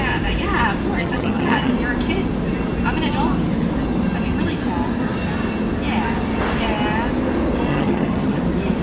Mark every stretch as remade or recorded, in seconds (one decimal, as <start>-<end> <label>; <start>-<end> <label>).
0.0-1.0 recorded; 1.0-1.7 remade; 1.7-7.7 recorded; 7.7-8.4 remade; 8.4-8.8 recorded